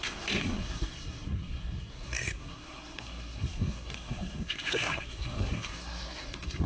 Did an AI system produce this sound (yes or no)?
yes